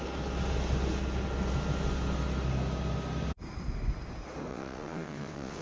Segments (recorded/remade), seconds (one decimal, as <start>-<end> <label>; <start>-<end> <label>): 0.0-4.5 recorded; 4.5-5.6 remade